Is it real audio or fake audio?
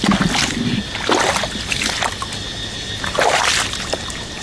real